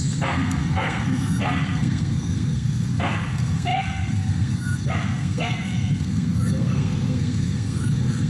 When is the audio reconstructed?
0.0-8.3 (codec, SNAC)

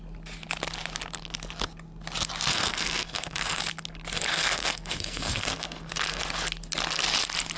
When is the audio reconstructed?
2.5-3.6 (codec, SNAC); 4.3-6.2